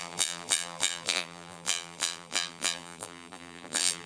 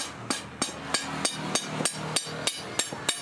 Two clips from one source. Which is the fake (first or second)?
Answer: first